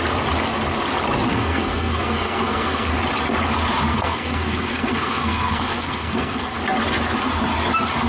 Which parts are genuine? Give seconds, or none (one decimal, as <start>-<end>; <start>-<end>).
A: 0.0-1.3; 2.9-3.9; 6.6-8.1